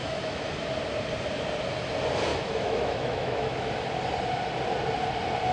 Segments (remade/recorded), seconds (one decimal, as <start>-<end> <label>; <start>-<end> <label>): 0.0-0.5 remade; 0.5-2.3 recorded; 2.3-3.7 remade; 3.7-5.5 recorded